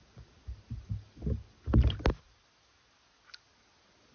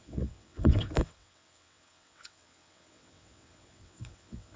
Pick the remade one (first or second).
second